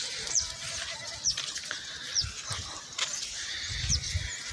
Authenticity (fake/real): real